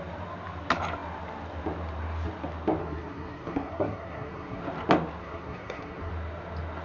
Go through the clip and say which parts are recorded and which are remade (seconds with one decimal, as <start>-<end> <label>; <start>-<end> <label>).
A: 0.0-2.8 recorded; 2.8-4.6 remade; 4.6-5.2 recorded; 5.2-6.1 remade; 6.1-6.8 recorded